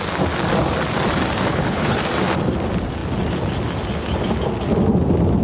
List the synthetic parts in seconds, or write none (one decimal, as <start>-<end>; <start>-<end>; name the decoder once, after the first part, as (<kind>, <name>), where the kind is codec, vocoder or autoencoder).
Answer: 1.5-2.0 (codec, HILCodec)